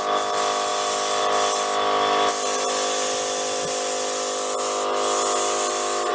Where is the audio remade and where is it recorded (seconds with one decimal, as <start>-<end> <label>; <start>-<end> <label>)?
0.0-6.1 recorded